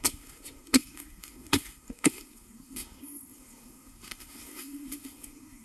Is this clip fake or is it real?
fake